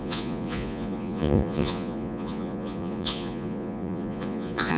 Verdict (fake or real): fake